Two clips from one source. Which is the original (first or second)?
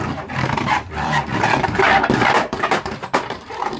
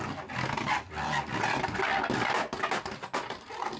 second